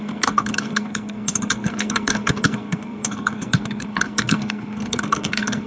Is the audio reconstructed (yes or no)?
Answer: yes